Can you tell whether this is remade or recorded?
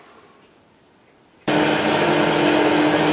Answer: recorded